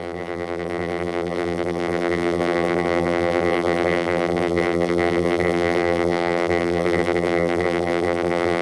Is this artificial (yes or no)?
yes